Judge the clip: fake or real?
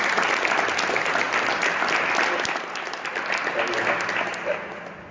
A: real